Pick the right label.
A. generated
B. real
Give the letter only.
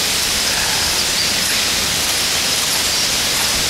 B